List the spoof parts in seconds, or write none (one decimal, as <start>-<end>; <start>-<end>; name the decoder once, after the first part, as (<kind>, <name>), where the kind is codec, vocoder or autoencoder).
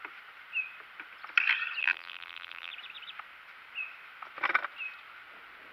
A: 1.8-2.7 (vocoder, BigVGAN v2)